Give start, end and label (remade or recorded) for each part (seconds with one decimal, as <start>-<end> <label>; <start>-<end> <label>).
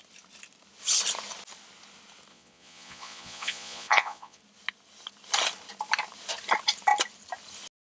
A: 0.0-2.3 recorded; 2.3-4.4 remade; 4.4-7.8 recorded